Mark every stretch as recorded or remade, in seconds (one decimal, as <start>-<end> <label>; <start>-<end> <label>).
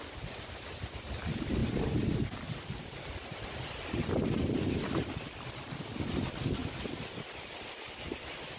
0.0-8.6 recorded